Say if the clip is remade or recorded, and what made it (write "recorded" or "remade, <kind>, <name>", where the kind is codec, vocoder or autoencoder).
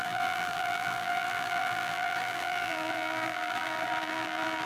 remade, vocoder, BigVGAN v2